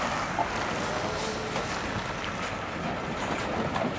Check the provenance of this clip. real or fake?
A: real